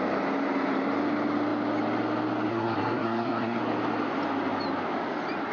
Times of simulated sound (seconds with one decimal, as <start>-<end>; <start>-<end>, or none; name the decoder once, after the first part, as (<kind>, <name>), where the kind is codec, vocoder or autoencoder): 2.5-3.6 (codec, SNAC)